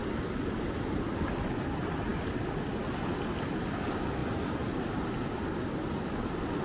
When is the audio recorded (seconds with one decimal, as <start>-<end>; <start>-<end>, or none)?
0.0-6.6

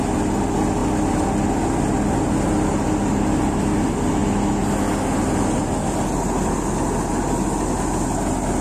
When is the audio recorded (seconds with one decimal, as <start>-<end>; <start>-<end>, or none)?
0.0-8.6

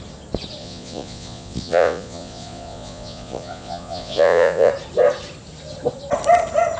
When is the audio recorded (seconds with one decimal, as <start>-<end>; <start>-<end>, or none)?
0.0-0.6; 4.7-6.8

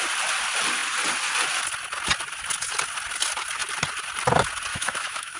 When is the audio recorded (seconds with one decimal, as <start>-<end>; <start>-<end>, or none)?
0.0-4.7

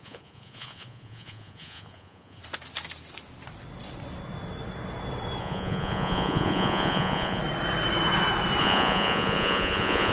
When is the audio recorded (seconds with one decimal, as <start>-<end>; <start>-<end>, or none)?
2.4-5.4; 7.4-8.6

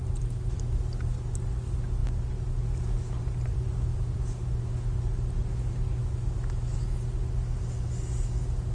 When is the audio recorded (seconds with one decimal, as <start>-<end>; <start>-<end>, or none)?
0.0-6.0; 7.0-8.7

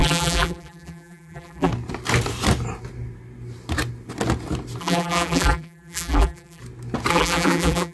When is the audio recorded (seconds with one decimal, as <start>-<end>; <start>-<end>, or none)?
1.7-4.8; 6.6-7.1

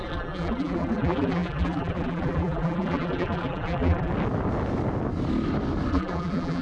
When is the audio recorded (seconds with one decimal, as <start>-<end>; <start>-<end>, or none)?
4.1-5.9